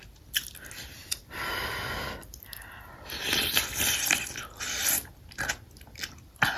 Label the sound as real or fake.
real